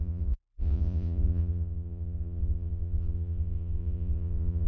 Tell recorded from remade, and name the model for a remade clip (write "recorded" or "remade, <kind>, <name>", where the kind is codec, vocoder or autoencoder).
remade, vocoder, Vocos